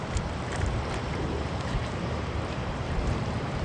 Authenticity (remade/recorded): remade